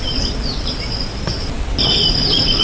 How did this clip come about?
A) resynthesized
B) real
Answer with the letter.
A